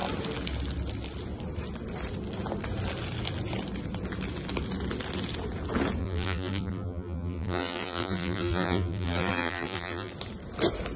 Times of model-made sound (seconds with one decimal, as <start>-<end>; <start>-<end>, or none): 6.0-10.1